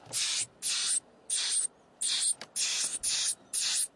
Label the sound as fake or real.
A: real